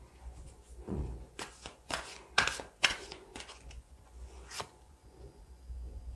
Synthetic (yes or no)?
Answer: yes